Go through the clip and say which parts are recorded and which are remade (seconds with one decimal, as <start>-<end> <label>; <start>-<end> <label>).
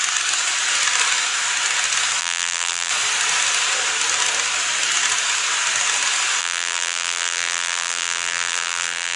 0.0-2.2 recorded; 2.2-2.9 remade; 2.9-6.4 recorded; 6.4-9.2 remade